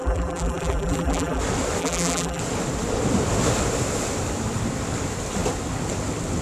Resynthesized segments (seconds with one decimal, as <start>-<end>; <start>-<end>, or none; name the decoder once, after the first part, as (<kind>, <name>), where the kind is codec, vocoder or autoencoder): 0.0-1.4 (vocoder, BigVGAN v2); 1.8-2.4